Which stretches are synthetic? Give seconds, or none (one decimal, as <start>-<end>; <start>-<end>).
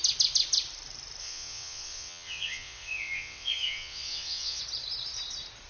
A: 1.2-4.6